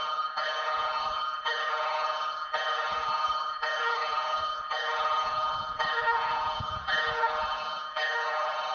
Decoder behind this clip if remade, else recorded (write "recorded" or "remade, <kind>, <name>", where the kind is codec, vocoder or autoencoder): remade, codec, HILCodec